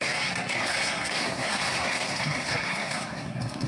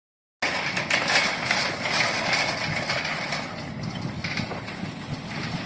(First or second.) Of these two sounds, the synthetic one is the first